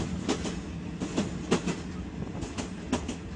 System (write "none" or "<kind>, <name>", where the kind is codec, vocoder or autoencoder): none